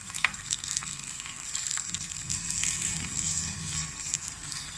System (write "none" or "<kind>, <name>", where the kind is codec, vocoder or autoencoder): codec, SNAC